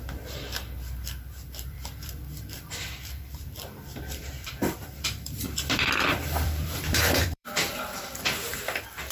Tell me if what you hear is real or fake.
fake